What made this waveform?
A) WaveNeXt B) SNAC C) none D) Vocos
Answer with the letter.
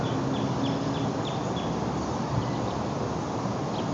C